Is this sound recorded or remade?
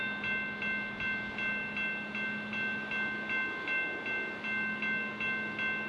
recorded